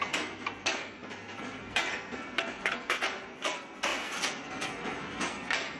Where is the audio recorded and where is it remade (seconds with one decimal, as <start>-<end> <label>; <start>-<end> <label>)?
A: 0.0-5.8 remade